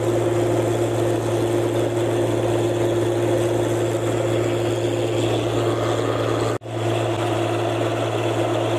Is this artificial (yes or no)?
no